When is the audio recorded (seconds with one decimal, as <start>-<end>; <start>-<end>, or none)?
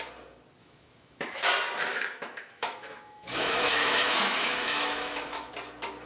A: 0.0-0.6; 1.5-1.9; 5.5-6.1